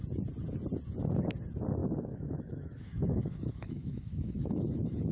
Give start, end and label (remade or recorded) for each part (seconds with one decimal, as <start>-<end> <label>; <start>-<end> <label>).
0.0-1.8 recorded; 1.8-5.1 remade